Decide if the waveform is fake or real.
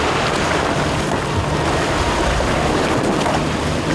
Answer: real